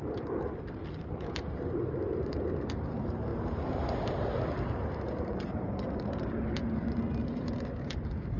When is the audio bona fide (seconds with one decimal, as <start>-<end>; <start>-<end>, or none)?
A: none

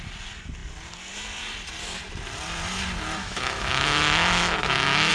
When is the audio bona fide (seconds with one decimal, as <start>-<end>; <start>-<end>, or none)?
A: 0.0-3.2